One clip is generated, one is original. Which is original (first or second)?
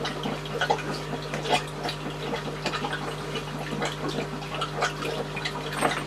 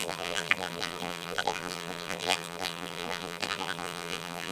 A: first